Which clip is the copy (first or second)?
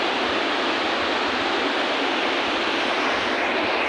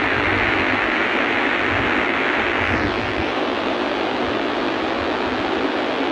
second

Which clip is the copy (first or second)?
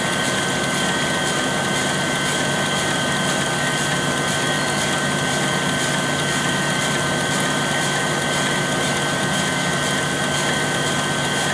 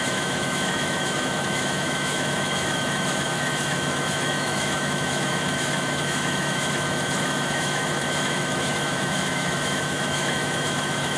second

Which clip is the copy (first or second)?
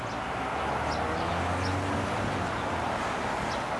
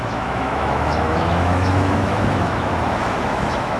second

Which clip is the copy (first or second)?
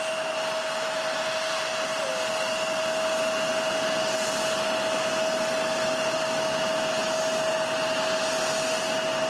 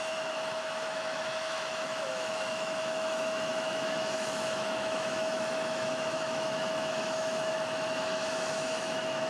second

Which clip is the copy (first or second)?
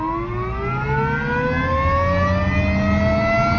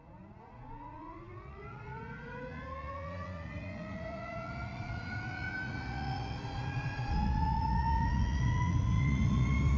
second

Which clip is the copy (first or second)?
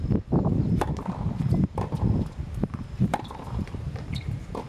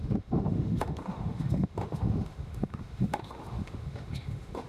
second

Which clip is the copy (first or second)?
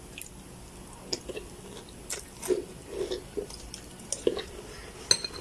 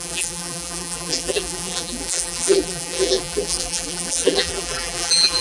second